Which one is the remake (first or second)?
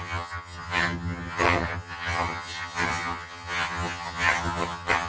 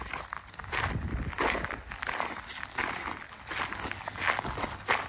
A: first